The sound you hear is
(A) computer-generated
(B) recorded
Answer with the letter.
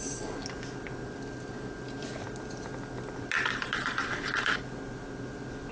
B